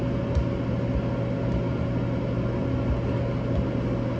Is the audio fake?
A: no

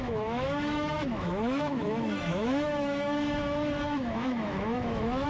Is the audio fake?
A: yes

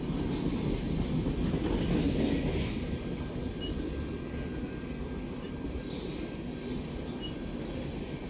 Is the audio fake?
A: no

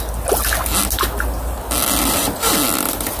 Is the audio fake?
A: no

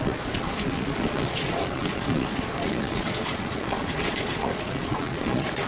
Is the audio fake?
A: yes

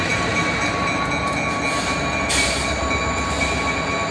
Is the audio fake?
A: no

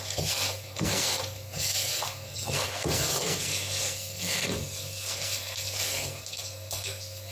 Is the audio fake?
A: yes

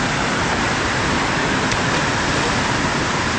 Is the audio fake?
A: no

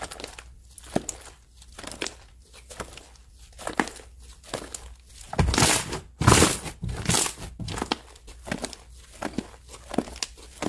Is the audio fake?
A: no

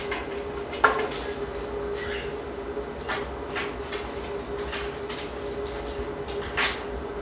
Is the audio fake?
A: no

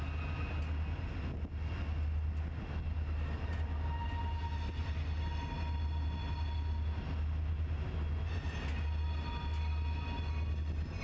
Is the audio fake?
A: no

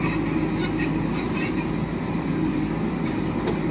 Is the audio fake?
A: no